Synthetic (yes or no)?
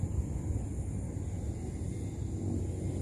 no